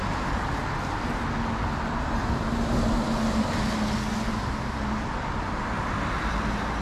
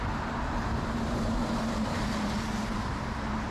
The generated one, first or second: second